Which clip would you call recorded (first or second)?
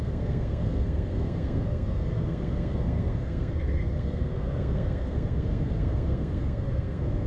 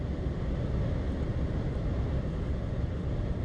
second